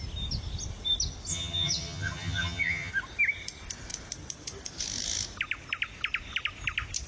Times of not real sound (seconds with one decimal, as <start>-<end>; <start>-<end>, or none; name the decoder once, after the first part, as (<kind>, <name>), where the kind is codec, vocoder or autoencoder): 1.3-2.9 (vocoder, HiFi-GAN)